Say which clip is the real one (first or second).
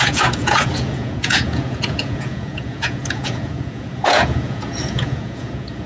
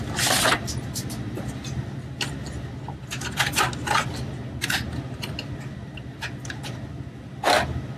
second